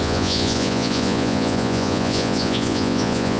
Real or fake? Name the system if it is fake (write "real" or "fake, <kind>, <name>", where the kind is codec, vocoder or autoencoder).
fake, vocoder, Vocos